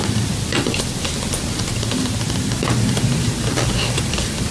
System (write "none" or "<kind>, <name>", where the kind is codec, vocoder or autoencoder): vocoder, BigVGAN v2